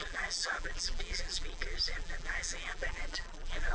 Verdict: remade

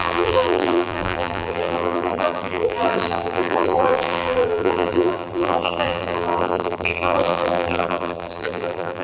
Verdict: remade